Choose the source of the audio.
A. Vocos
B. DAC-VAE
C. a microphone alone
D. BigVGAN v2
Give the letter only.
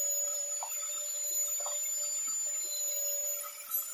C